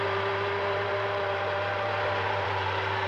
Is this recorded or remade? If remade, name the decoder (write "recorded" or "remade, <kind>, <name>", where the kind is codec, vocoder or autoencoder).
remade, vocoder, BigVGAN v2